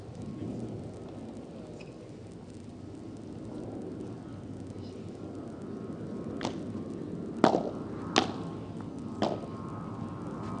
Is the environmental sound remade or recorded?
recorded